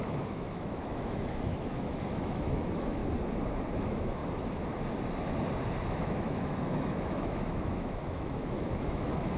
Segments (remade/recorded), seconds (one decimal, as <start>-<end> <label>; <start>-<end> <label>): 0.0-3.0 remade; 3.0-3.7 recorded; 3.7-4.2 remade; 4.2-5.9 recorded; 5.9-9.4 remade